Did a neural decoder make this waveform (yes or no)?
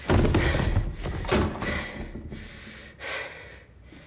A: no